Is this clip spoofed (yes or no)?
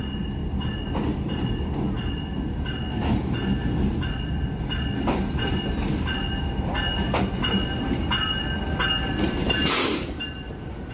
no